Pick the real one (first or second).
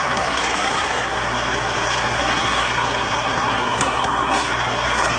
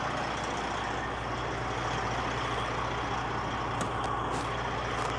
second